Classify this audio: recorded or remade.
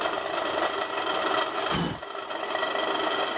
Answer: recorded